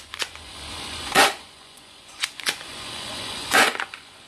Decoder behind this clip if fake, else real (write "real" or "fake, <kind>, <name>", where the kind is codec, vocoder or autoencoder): fake, vocoder, Vocos